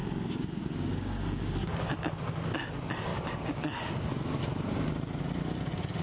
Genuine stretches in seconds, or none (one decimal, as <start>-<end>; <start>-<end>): 2.1-3.1; 4.1-6.0